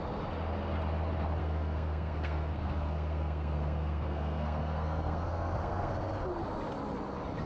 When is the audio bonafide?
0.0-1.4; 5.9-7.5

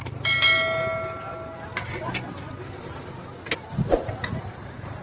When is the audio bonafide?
0.0-5.0

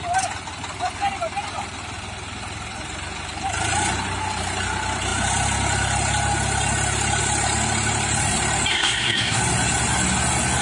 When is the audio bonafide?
0.0-8.7; 9.4-10.6

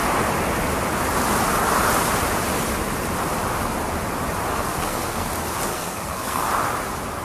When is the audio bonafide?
0.0-4.5; 5.3-5.7; 6.5-7.2

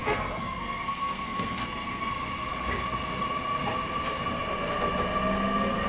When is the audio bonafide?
2.1-5.9

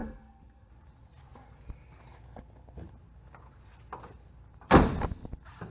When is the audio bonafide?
0.7-5.7